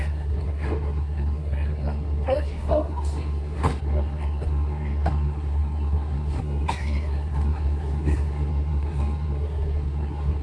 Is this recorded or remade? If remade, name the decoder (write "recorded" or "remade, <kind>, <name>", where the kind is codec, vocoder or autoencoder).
remade, codec, SNAC